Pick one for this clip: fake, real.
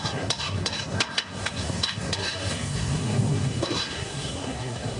fake